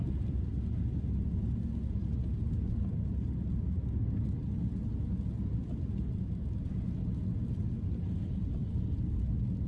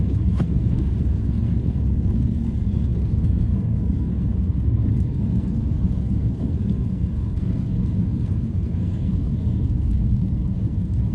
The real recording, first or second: first